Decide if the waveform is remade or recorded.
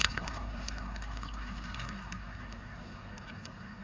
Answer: remade